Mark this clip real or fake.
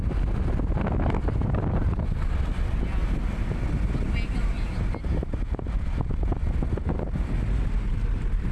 real